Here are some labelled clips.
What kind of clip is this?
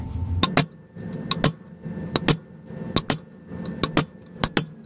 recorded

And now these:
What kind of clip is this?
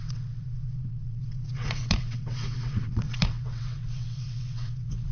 remade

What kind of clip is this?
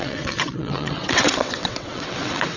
remade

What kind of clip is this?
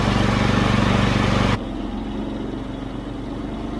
recorded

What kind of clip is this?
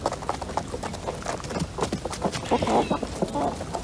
recorded